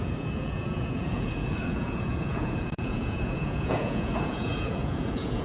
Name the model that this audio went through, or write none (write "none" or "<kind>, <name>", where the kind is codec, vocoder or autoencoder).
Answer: vocoder, Vocos